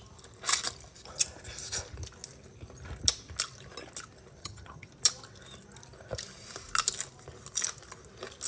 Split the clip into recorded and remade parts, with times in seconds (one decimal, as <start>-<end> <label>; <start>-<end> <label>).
0.0-4.4 recorded; 4.4-4.9 remade; 4.9-8.5 recorded